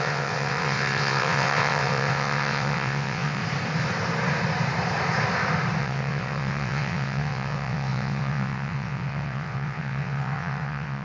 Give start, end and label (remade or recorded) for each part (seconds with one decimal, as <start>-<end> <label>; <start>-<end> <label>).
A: 0.0-3.4 remade; 3.4-5.8 recorded; 5.8-11.0 remade